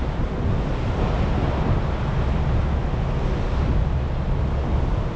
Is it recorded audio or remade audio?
recorded